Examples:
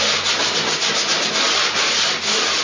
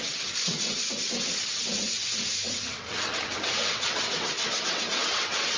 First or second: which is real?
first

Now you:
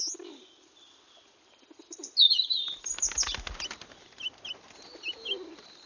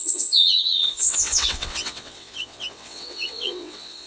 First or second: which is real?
first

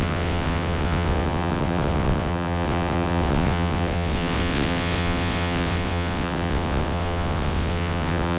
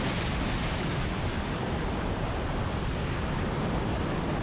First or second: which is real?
second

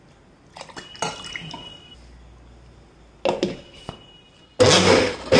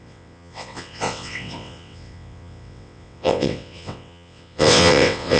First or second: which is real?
first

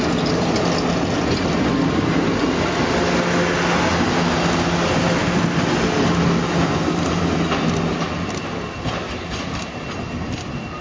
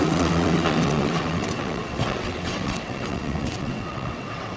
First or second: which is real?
first